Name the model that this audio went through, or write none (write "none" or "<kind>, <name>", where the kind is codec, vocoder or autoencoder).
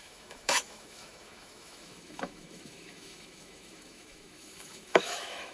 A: autoencoder, DAC-VAE